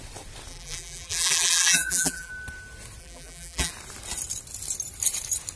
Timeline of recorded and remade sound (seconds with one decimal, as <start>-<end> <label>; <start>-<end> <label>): 0.0-0.5 recorded; 0.5-2.3 remade; 2.3-3.0 recorded; 3.0-3.7 remade; 3.7-5.6 recorded